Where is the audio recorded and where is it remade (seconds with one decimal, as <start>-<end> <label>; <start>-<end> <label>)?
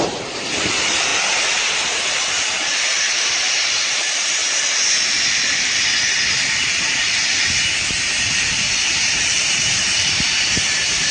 0.0-1.1 remade; 1.1-1.8 recorded; 1.8-4.4 remade; 4.4-6.4 recorded; 6.4-7.2 remade; 7.2-8.9 recorded; 8.9-11.1 remade